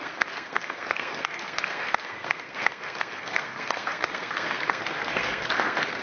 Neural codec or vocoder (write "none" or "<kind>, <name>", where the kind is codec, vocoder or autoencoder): codec, SNAC